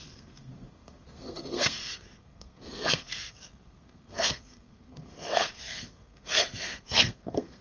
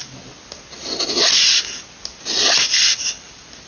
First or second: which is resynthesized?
first